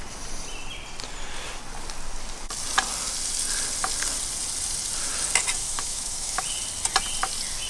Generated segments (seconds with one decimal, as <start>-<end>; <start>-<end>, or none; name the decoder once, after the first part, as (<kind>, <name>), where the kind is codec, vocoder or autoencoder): 5.6-6.4 (autoencoder, DAC-VAE)